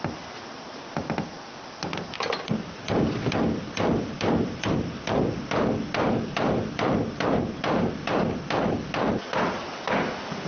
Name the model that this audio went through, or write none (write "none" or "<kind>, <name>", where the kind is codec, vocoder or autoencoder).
none